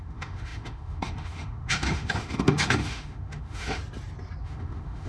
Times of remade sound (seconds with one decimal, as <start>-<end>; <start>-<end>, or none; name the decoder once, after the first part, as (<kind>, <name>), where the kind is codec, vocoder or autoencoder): 0.0-3.8 (autoencoder, DAC-VAE); 4.4-5.1